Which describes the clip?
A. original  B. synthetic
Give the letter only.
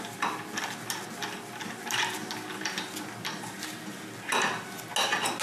A